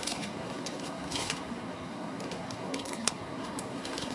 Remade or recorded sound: remade